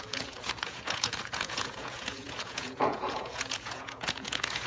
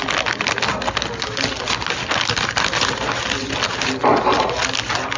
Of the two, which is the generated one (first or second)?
first